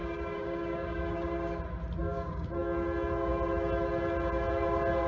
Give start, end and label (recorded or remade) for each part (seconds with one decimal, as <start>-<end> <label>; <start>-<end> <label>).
0.0-1.6 remade; 1.6-2.0 recorded; 2.0-2.6 remade; 2.6-5.1 recorded